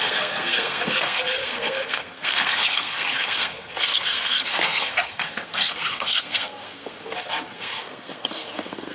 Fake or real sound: fake